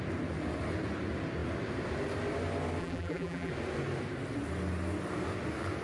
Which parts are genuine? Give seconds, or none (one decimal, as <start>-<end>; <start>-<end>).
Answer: 0.0-2.8; 3.5-5.8